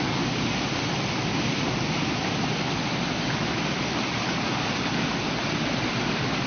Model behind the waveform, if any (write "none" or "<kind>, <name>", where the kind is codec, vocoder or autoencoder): none